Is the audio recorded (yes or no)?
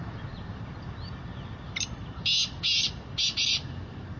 yes